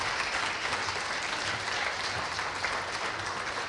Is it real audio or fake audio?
real